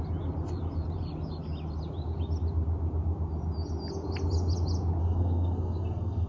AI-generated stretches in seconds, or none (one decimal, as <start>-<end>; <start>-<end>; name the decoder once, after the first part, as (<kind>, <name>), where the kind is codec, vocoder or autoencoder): 5.0-6.3 (codec, SNAC)